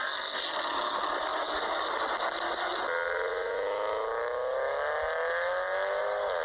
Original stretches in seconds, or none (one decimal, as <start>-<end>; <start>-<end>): 0.0-6.4